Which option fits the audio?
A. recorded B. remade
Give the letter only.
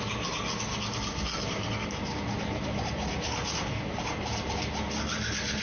A